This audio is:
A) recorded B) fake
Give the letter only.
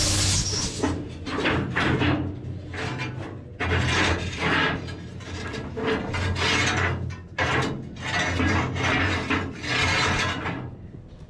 A